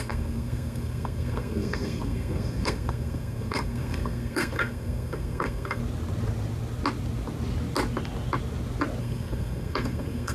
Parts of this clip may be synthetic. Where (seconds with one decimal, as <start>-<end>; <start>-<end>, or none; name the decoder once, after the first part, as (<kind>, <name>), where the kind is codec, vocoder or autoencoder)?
0.0-5.8 (codec, SNAC); 9.0-10.3